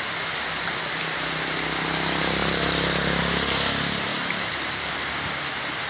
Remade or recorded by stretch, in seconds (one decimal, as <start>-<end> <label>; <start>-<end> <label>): 0.0-2.4 recorded; 2.4-3.2 remade; 3.2-5.9 recorded